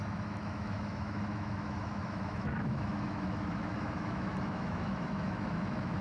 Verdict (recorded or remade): remade